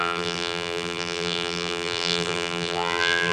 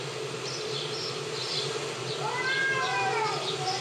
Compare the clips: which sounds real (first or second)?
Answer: second